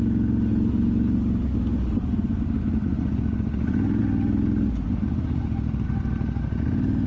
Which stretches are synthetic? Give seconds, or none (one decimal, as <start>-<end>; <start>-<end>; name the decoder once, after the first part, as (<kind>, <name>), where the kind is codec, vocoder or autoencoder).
none